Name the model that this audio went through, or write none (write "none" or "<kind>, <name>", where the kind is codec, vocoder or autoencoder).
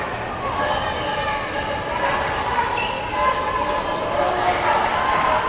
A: none